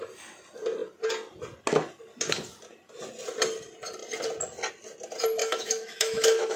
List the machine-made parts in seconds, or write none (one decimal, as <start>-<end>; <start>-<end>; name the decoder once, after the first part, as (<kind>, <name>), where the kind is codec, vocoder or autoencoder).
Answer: 5.4-6.6 (autoencoder, DAC-VAE)